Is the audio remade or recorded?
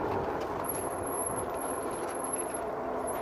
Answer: recorded